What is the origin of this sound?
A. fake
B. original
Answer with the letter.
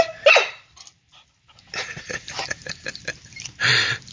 B